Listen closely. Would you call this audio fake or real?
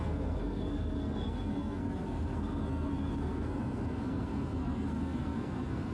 fake